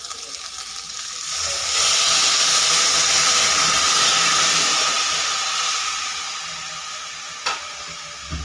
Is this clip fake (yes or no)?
no